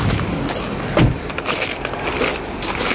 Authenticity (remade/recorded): recorded